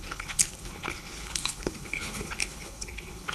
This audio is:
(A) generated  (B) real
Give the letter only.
A